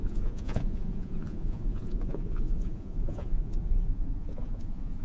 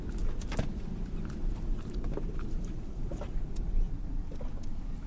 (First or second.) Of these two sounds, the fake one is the first